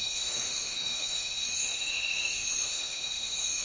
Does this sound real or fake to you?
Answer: fake